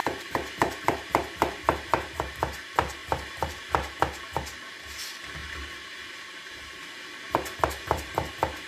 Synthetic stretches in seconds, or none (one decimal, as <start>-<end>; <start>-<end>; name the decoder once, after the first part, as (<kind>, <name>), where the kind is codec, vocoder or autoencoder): 0.0-2.4 (vocoder, BigVGAN v2); 3.0-3.6; 5.4-8.7